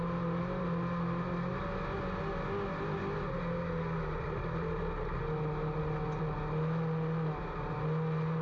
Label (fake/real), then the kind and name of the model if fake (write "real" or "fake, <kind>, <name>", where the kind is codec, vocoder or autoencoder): real